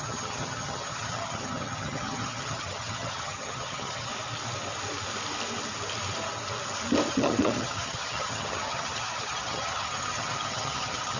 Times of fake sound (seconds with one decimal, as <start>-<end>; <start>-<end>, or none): 0.0-4.1; 7.1-11.2